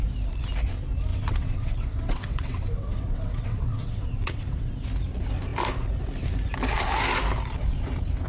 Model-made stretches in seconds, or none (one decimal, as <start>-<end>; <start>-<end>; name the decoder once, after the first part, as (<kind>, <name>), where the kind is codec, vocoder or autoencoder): 1.1-4.7 (vocoder, WaveNeXt)